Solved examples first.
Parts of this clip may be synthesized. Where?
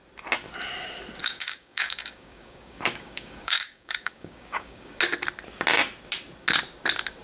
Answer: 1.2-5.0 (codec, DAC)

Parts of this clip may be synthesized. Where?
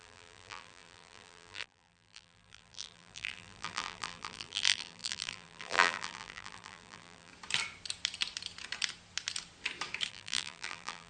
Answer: 0.0-7.3 (vocoder, BigVGAN v2); 10.1-11.1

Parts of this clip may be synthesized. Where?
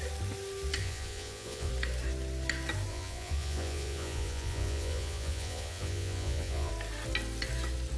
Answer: 0.8-1.7 (vocoder, Vocos); 2.9-6.7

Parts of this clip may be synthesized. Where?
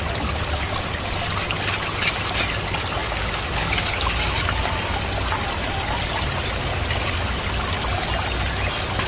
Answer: 3.0-3.9 (codec, DAC)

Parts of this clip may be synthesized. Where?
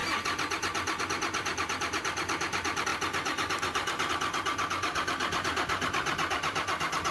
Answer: 1.0-7.1 (vocoder, BigVGAN v2)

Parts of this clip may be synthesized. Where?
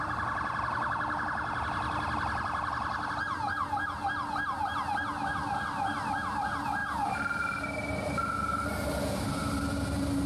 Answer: none